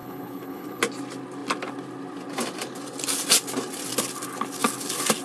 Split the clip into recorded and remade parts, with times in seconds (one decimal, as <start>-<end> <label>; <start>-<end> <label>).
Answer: 0.0-0.8 remade; 0.8-5.2 recorded